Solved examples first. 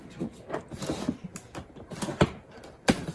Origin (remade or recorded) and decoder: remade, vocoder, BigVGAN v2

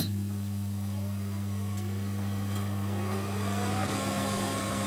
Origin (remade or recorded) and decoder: remade, codec, SNAC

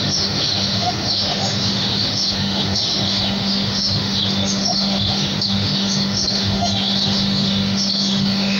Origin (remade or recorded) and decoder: remade, autoencoder, DAC-VAE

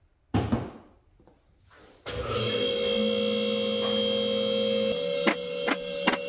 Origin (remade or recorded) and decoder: recorded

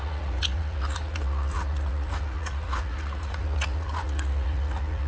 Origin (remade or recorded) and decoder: remade, vocoder, Vocos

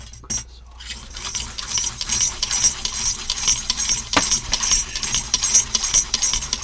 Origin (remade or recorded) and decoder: recorded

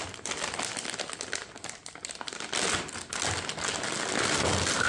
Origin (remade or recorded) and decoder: recorded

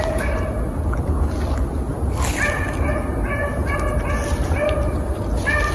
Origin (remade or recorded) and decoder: recorded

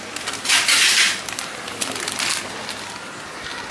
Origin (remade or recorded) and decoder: recorded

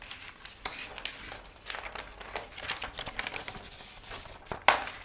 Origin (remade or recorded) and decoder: recorded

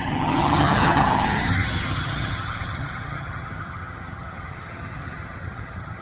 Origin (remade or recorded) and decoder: remade, vocoder, HiFi-GAN